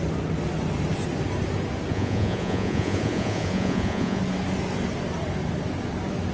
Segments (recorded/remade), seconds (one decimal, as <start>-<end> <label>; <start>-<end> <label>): 0.0-1.9 recorded; 1.9-4.2 remade; 4.2-6.3 recorded